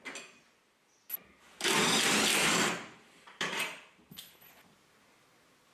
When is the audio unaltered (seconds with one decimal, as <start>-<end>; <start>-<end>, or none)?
0.0-5.7